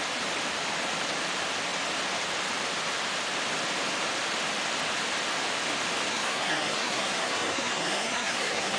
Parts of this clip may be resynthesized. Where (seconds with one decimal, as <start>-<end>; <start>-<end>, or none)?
6.1-8.8